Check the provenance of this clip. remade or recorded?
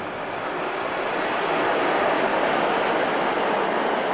recorded